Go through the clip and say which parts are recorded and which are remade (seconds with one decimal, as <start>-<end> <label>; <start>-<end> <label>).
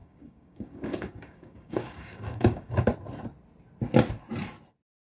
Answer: 0.0-2.8 remade; 2.8-5.1 recorded